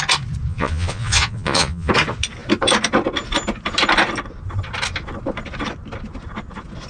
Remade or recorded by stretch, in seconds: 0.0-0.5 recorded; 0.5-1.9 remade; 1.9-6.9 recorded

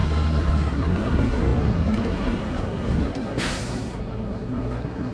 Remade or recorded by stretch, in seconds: 0.0-5.1 remade

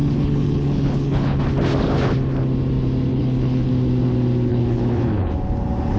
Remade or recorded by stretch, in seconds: 0.0-1.4 remade; 1.4-3.1 recorded; 3.1-3.7 remade; 3.7-4.5 recorded; 4.5-5.3 remade; 5.3-6.0 recorded